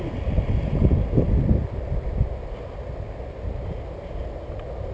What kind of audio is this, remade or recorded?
recorded